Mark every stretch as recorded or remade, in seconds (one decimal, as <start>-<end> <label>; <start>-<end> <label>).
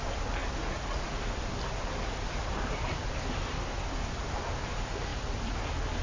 0.0-6.0 recorded